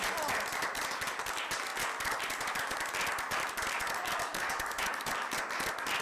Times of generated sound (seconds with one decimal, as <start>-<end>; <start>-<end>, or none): 4.3-4.8